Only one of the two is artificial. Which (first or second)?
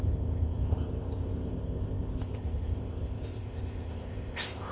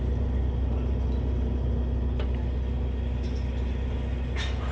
first